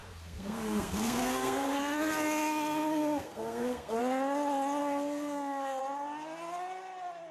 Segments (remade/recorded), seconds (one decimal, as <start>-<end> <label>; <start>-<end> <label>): 0.0-4.0 remade; 4.0-4.8 recorded; 4.8-5.8 remade; 5.8-7.3 recorded